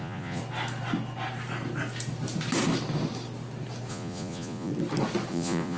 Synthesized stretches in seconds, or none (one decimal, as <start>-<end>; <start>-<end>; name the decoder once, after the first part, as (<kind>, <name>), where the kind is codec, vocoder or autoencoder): 0.0-0.4 (vocoder, Vocos); 3.9-4.7; 5.3-5.8